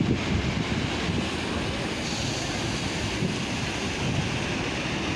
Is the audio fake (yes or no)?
no